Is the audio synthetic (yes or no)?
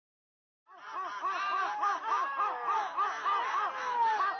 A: no